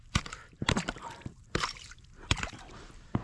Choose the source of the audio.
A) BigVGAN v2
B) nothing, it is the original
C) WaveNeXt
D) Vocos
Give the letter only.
A